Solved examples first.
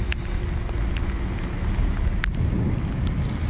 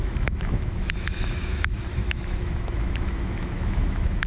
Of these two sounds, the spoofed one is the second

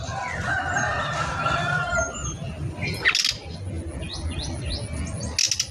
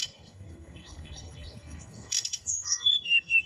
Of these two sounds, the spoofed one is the second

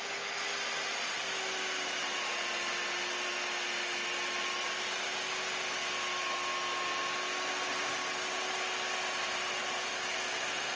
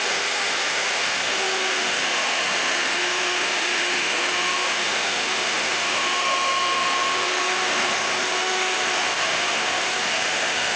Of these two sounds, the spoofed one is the second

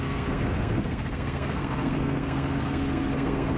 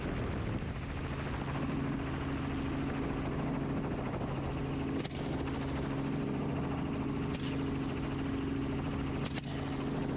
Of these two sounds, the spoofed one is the first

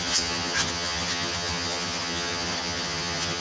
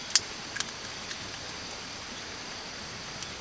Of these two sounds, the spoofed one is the first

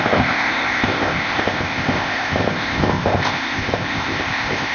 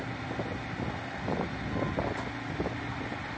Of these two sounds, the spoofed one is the first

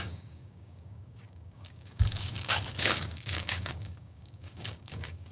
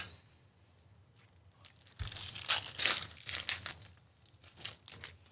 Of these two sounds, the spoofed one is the first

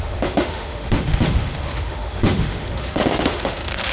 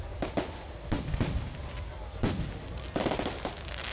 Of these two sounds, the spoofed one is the first